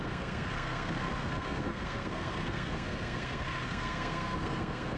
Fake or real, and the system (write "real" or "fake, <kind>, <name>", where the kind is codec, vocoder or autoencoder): fake, codec, SNAC